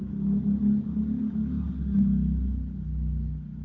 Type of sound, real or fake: real